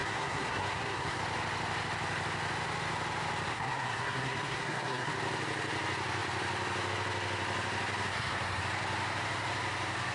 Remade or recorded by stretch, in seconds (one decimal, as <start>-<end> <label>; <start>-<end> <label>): 0.0-1.2 remade; 1.2-3.5 recorded; 3.5-5.1 remade; 5.1-8.1 recorded; 8.1-8.6 remade; 8.6-10.1 recorded